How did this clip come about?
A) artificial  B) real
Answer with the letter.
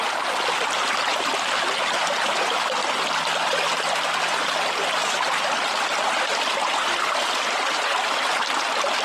B